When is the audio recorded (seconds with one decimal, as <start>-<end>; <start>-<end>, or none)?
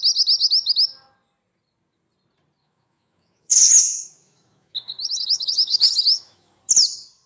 0.0-2.6; 6.6-7.3